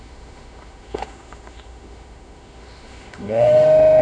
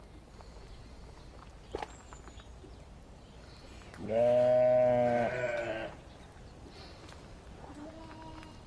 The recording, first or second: second